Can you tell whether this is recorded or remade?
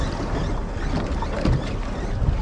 recorded